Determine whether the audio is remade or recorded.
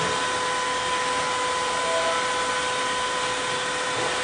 recorded